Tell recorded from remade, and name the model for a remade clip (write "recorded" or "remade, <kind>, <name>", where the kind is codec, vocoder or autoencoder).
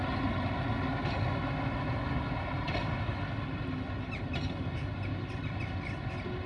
recorded